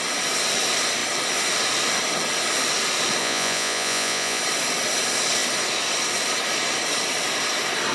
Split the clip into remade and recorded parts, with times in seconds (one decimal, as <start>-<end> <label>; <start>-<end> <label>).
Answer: 0.0-3.2 recorded; 3.2-4.4 remade; 4.4-7.9 recorded